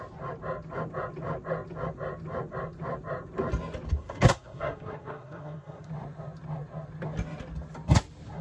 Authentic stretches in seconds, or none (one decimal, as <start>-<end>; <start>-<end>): 0.0-3.9; 5.9-8.4